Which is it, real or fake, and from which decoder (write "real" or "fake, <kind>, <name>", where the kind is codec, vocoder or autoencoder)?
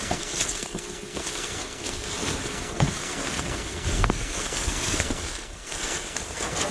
fake, codec, SNAC